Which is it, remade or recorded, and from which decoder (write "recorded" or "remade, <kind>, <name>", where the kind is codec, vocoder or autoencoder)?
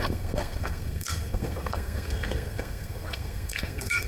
remade, codec, SNAC